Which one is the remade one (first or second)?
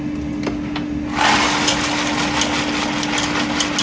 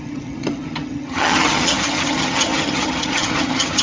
second